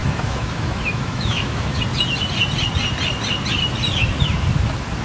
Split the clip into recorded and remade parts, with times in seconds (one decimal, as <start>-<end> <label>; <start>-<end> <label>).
0.0-1.8 remade; 1.8-5.0 recorded